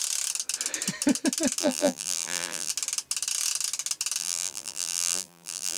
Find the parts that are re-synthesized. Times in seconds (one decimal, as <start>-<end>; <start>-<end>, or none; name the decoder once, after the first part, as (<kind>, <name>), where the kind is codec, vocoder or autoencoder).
1.6-2.7 (vocoder, BigVGAN v2); 4.2-5.8